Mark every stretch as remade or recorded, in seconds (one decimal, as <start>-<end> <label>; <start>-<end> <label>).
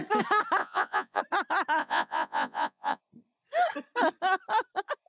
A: 0.0-0.6 recorded; 0.6-1.2 remade; 1.2-1.8 recorded; 1.8-3.0 remade; 3.0-5.1 recorded